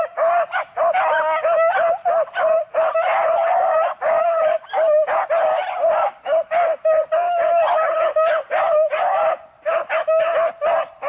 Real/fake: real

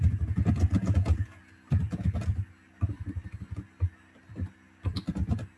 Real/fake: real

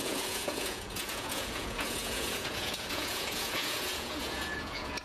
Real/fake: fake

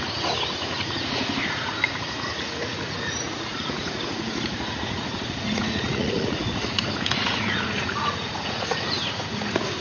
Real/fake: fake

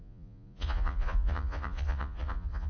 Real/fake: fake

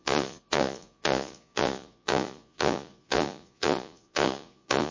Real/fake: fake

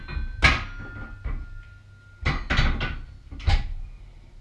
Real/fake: real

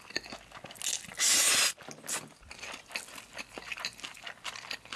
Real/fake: real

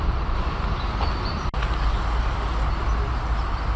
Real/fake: real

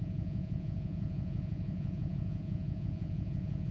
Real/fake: fake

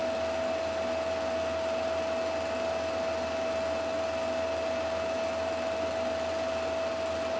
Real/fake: real